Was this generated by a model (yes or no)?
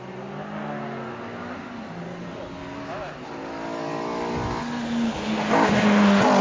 no